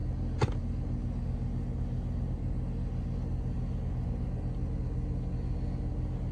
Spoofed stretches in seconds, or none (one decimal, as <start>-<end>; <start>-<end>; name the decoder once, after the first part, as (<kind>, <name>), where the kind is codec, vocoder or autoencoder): none